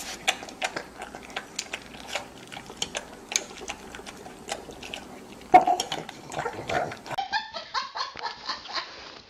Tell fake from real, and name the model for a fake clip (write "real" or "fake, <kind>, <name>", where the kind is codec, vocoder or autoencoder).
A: real